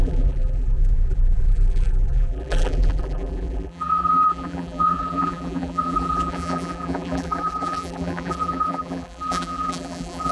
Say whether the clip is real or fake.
fake